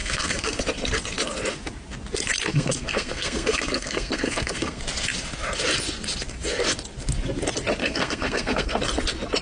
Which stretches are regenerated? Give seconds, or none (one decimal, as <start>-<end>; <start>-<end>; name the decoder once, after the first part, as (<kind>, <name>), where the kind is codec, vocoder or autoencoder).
0.0-0.6 (codec, SNAC); 2.5-4.8; 7.8-8.8